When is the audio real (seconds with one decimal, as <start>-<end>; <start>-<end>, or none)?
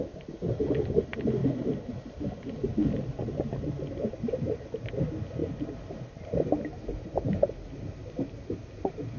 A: 0.0-9.2